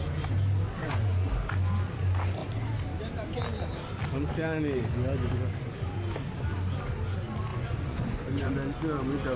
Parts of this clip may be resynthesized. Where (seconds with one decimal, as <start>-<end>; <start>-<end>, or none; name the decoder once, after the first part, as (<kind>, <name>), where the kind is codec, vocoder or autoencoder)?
0.8-1.3 (vocoder, Vocos); 7.5-8.5